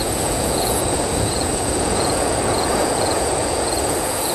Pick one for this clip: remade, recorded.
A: remade